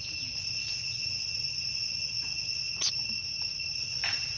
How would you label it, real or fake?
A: real